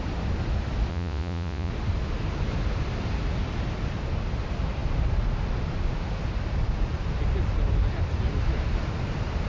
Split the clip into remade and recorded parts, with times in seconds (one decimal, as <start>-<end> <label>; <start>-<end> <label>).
0.0-0.9 recorded; 0.9-1.7 remade; 1.7-9.5 recorded